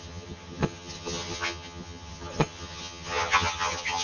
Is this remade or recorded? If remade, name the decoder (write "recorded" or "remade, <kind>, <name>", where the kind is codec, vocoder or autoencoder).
remade, vocoder, HiFi-GAN